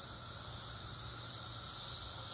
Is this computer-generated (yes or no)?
no